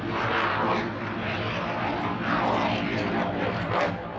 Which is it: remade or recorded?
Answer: recorded